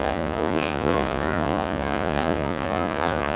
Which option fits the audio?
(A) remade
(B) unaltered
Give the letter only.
A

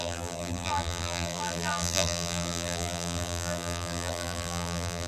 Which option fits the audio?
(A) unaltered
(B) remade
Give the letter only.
B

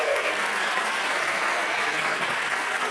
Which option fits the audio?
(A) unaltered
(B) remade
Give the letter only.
B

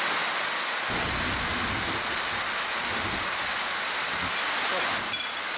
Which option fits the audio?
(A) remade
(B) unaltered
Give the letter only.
B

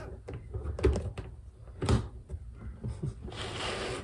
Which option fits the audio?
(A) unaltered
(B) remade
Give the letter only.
A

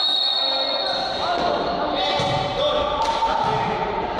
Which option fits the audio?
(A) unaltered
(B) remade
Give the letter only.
A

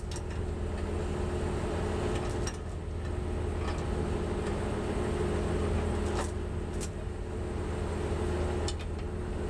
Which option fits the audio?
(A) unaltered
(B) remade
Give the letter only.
A